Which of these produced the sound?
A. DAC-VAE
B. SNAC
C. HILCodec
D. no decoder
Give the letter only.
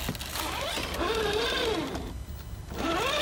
D